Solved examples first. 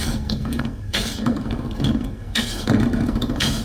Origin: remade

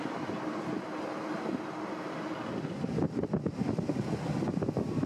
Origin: recorded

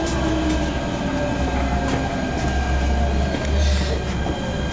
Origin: recorded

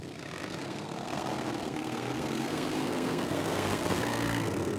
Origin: remade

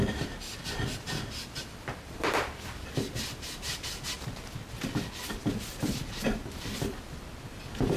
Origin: recorded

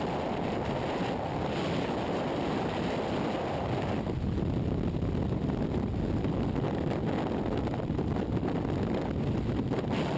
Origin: recorded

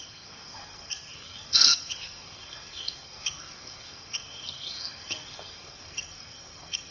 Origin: remade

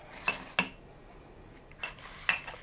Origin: recorded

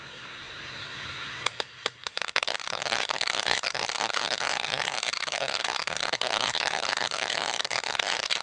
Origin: remade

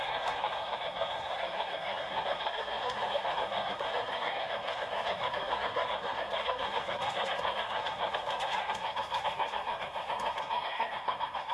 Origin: remade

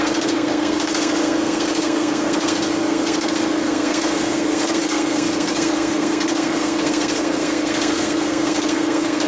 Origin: remade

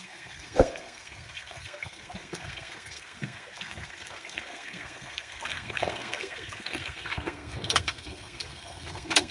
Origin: remade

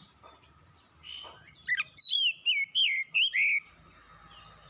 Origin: recorded